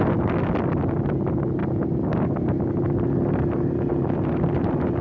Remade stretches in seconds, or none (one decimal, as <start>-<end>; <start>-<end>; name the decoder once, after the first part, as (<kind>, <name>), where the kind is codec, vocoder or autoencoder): none